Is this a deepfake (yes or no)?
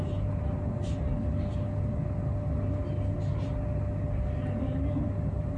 no